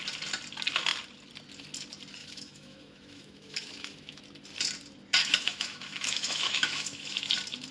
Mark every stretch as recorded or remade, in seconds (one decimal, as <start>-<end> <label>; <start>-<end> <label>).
0.0-2.2 recorded; 2.2-4.2 remade; 4.2-5.2 recorded; 5.2-7.3 remade; 7.3-7.7 recorded